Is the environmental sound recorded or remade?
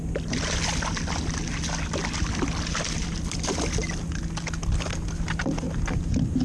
recorded